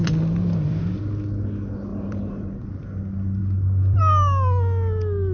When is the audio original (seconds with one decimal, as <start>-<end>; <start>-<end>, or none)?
0.8-1.9; 2.6-3.4; 4.0-5.3